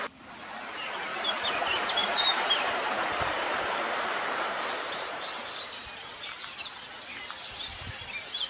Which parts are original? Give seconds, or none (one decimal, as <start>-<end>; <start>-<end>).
0.0-2.0; 5.1-8.5